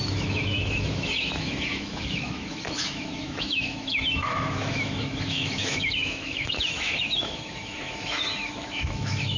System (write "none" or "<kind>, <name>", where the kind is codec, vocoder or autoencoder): autoencoder, DAC-VAE